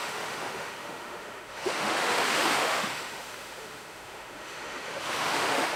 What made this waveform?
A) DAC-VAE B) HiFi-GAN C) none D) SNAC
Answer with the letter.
A